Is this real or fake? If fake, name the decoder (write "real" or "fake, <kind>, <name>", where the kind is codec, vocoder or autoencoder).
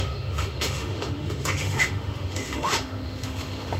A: fake, autoencoder, DAC-VAE